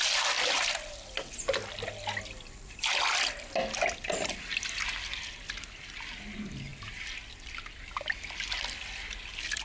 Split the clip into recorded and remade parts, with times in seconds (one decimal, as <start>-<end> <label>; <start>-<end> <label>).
0.0-9.6 recorded